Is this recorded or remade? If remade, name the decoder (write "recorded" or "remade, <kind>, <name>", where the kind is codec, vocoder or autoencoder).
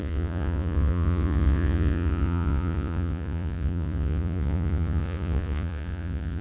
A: remade, vocoder, Vocos